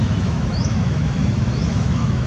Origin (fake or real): fake